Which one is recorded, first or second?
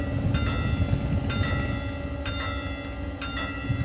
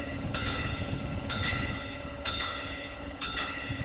first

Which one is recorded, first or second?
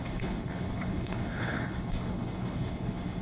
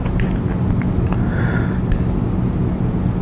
second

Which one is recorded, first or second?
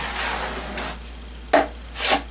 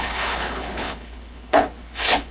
first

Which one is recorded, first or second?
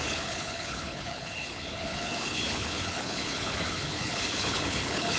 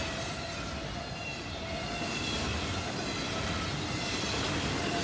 second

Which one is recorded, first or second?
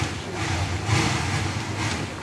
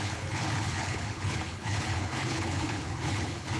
first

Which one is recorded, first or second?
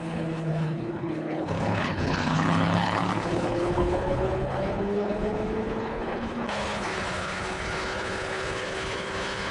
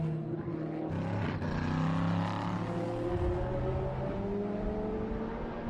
second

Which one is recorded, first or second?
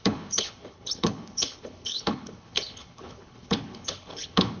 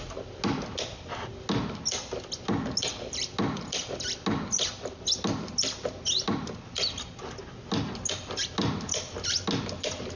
second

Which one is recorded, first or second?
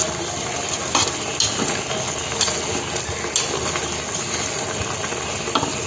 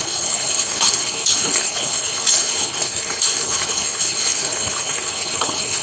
first